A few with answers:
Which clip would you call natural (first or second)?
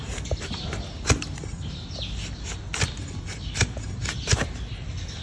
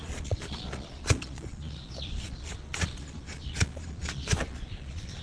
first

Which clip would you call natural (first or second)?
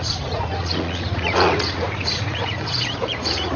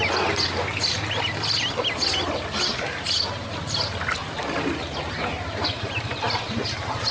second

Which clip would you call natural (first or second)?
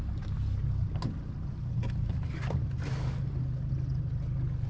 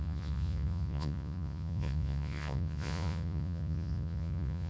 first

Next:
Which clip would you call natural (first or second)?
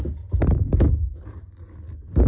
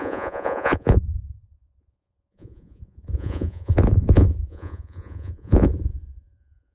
first